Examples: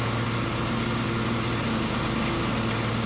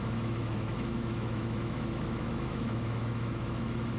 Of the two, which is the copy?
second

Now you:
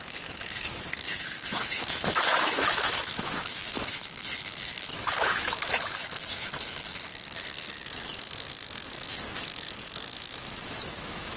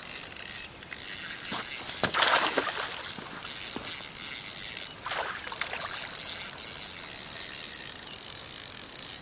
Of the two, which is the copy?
first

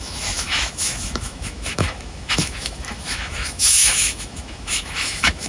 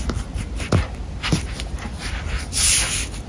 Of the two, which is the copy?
first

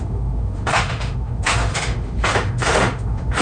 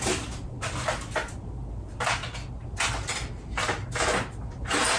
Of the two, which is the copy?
first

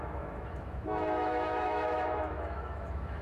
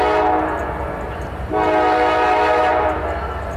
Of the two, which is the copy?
first